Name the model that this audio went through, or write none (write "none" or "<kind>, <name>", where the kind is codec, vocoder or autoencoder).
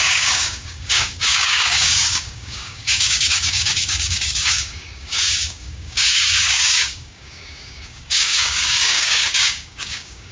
codec, DAC